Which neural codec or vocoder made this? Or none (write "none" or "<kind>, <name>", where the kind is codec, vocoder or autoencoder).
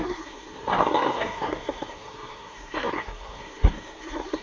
codec, SNAC